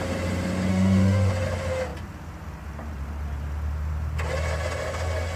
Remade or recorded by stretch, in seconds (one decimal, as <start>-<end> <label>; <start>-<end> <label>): 0.0-0.7 recorded; 0.7-1.3 remade; 1.3-5.4 recorded